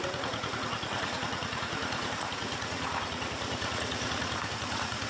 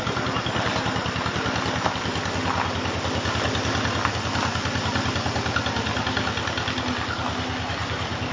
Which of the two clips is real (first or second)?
second